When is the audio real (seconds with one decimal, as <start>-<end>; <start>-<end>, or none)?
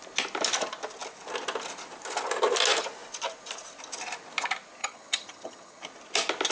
0.0-4.8; 5.8-6.5